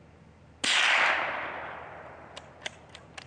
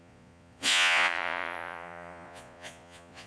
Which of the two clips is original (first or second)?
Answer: first